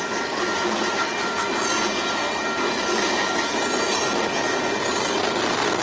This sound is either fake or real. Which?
real